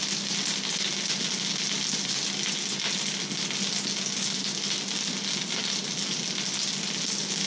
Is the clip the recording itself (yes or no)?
yes